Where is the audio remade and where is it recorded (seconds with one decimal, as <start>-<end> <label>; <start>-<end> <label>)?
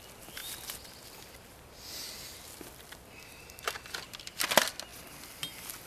0.0-5.9 recorded